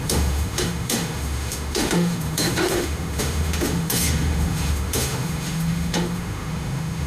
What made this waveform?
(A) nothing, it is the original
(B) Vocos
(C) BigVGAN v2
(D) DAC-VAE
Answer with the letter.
D